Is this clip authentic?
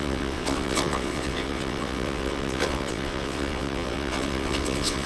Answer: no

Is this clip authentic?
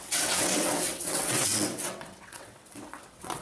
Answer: no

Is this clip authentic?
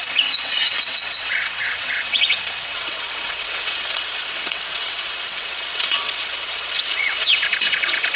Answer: no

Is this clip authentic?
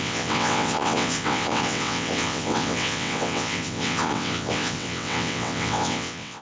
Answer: no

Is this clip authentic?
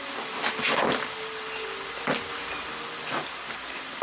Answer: yes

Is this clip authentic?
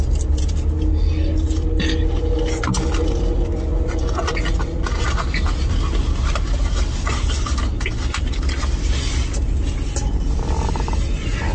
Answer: yes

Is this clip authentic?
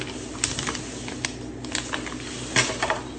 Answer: yes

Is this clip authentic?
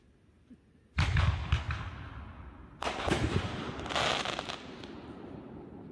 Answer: yes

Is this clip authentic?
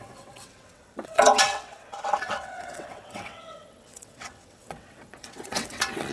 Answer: no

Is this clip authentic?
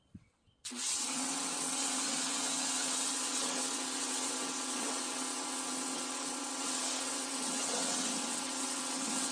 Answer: no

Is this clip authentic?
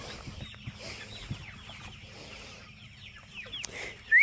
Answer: yes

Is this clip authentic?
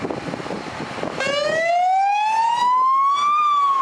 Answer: yes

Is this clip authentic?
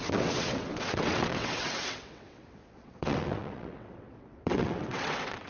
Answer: no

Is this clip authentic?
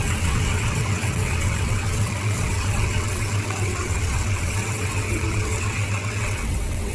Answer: no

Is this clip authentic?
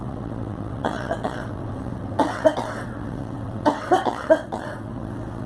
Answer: no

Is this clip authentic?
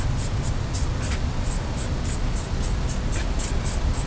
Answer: yes